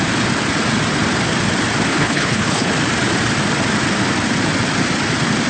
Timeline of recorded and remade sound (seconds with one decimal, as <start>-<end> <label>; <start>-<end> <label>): 0.0-1.9 recorded; 1.9-2.7 remade; 2.7-5.5 recorded